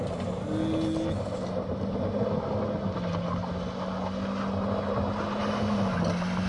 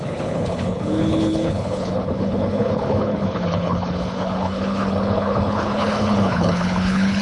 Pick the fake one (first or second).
second